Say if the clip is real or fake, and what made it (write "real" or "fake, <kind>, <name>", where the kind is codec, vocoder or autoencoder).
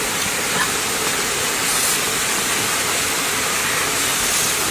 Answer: real